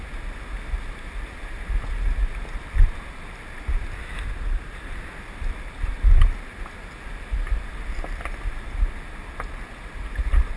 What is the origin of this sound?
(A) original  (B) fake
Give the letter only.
A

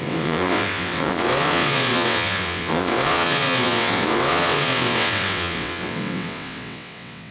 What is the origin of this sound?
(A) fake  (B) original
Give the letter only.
A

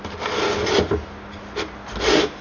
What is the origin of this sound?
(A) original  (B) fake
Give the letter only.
A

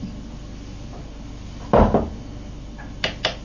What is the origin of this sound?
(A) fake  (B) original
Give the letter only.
B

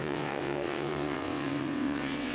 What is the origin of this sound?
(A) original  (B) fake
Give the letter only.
B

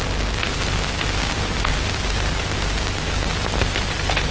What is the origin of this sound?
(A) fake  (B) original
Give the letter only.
B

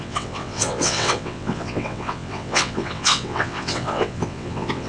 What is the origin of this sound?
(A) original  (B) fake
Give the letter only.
B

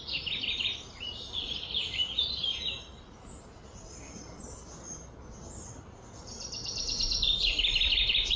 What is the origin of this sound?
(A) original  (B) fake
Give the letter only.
A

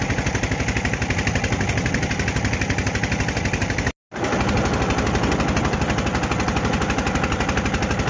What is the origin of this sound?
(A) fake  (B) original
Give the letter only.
B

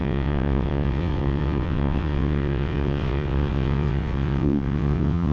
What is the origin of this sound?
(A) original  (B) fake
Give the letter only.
B